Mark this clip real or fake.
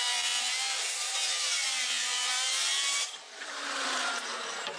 fake